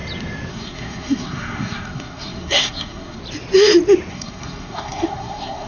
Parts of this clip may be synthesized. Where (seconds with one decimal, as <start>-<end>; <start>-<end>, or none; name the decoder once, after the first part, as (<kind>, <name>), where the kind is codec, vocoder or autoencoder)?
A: 0.5-3.2 (codec, SNAC); 4.1-5.7